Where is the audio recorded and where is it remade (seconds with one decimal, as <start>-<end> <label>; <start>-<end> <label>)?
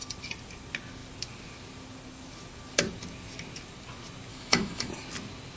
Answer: 0.0-4.3 recorded; 4.3-4.9 remade; 4.9-5.6 recorded